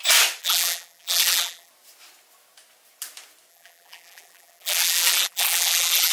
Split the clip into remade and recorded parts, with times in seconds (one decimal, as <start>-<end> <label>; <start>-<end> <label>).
0.0-0.4 recorded; 0.4-1.7 remade; 1.7-3.5 recorded; 3.5-6.1 remade